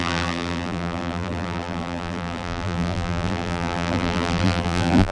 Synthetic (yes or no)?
yes